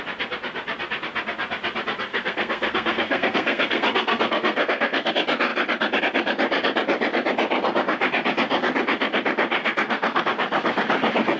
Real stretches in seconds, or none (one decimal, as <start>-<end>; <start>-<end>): 0.0-2.1; 5.1-9.6; 10.2-11.4